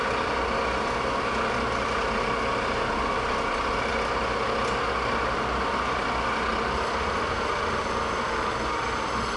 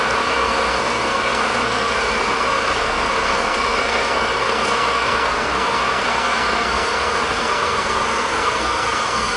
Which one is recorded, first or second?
first